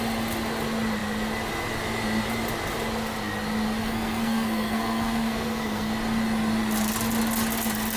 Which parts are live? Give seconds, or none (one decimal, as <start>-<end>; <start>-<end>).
0.0-3.8; 5.9-8.0